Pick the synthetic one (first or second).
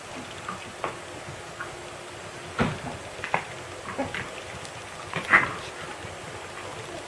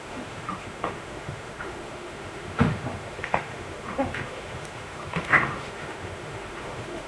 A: second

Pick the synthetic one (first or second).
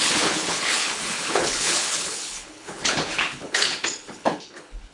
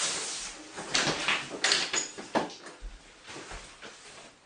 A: first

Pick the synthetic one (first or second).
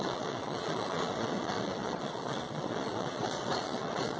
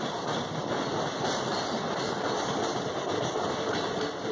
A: first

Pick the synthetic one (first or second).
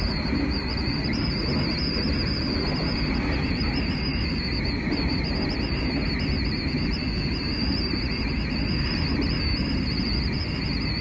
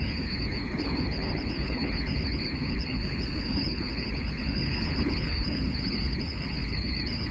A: second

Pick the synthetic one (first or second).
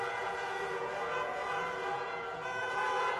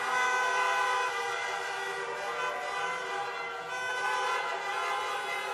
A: first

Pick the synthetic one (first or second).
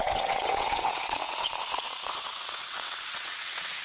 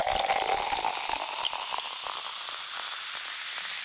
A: first